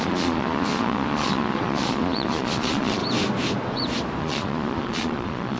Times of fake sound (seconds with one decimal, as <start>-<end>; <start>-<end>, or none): 0.0-3.0; 4.2-5.6

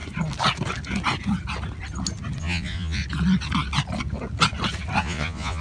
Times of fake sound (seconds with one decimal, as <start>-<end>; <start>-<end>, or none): 2.4-3.0; 5.0-5.6

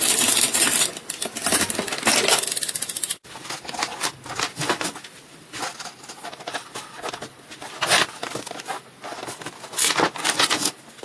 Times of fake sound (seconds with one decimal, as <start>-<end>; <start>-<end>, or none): none

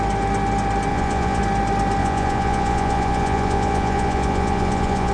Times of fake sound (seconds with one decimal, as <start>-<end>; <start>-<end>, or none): 0.9-1.4; 2.0-5.1

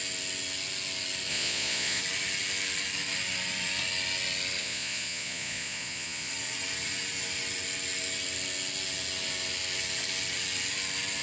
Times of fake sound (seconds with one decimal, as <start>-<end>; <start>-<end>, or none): 1.3-2.0; 4.6-6.3

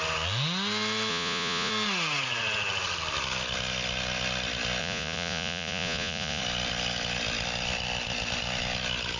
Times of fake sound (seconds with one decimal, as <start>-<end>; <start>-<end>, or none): 1.1-1.7; 4.8-6.4

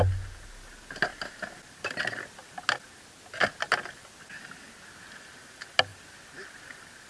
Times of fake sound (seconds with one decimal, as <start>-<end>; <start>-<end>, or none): none

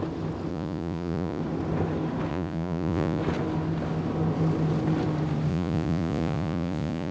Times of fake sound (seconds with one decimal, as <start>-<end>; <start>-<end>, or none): 0.5-1.4; 2.3-3.2; 5.5-7.1